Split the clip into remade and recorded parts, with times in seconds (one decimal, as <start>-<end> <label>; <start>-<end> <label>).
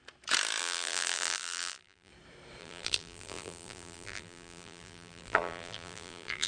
0.0-0.6 recorded; 0.6-2.1 remade; 2.1-2.6 recorded; 2.6-6.5 remade